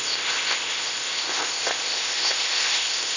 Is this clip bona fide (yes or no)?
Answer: no